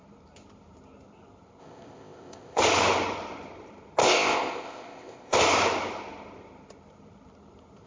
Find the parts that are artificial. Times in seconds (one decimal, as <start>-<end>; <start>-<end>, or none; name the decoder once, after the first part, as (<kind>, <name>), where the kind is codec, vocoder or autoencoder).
1.6-2.6 (codec, ZipCodec); 4.0-5.4